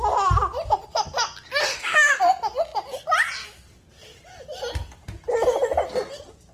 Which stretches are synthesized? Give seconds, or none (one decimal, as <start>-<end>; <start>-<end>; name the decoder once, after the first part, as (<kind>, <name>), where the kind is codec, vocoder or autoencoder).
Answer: 1.7-2.2 (autoencoder, DAC-VAE)